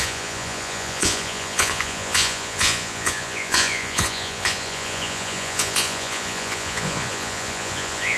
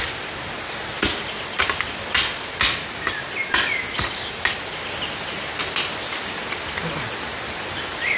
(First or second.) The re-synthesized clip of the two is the first